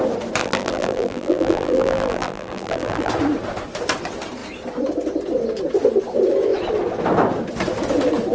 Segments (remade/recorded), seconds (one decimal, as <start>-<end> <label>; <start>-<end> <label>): 0.0-0.4 recorded; 0.4-3.1 remade; 3.1-8.3 recorded